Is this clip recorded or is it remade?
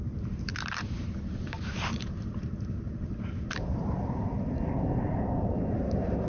remade